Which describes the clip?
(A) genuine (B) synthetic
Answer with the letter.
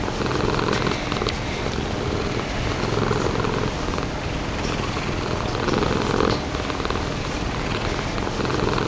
A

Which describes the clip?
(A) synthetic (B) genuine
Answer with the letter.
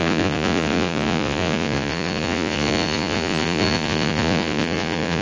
A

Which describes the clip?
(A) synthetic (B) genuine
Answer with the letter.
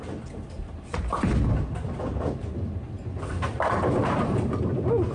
B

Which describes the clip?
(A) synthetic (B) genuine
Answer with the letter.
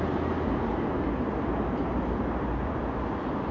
B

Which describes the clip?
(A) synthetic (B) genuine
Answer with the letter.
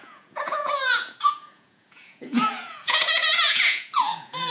A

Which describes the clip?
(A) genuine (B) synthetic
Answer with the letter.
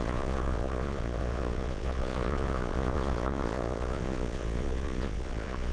B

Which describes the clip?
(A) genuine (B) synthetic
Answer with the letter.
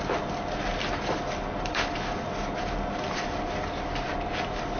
A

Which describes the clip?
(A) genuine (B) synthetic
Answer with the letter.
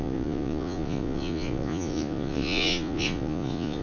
B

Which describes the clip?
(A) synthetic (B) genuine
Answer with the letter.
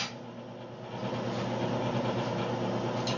B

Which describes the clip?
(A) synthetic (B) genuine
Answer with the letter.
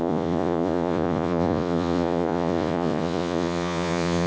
A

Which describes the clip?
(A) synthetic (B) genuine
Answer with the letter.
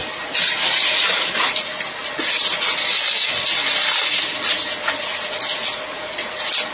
B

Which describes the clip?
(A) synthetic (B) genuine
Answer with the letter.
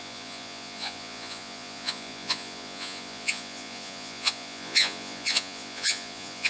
A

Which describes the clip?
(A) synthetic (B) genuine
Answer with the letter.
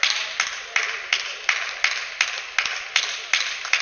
B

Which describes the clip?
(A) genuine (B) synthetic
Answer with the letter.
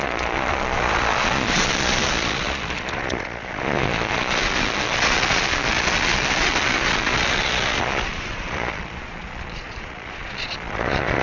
B